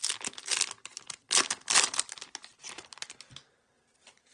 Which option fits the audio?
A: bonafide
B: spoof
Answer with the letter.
A